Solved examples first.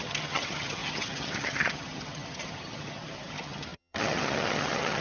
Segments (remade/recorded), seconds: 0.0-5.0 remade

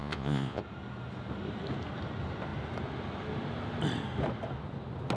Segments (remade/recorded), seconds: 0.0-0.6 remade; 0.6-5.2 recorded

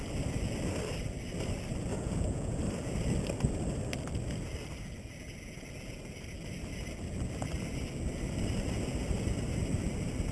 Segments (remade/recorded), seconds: 0.0-1.9 recorded; 1.9-2.6 remade; 2.6-10.3 recorded

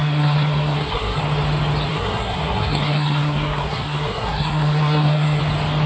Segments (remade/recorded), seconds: 0.0-1.2 remade; 1.2-1.9 recorded; 1.9-5.4 remade; 5.4-5.9 recorded

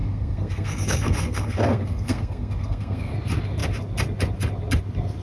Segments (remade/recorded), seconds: 0.0-3.1 remade; 3.1-5.2 recorded

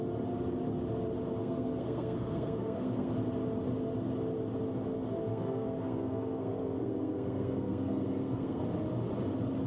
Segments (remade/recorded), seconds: 0.0-1.4 recorded; 1.4-3.1 remade; 3.1-5.3 recorded; 5.3-8.6 remade; 8.6-9.7 recorded